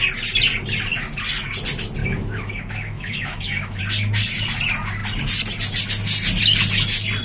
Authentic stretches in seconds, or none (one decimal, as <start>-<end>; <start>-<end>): 0.0-2.0; 3.8-7.2